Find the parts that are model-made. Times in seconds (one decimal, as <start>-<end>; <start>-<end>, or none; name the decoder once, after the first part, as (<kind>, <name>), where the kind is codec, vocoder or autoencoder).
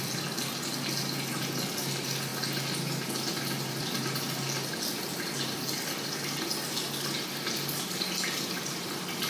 none